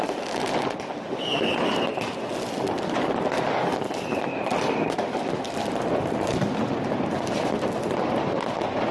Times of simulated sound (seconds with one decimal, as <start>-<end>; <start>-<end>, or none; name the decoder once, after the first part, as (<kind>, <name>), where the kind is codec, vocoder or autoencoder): none